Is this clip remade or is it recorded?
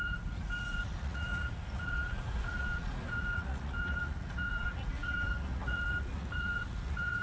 remade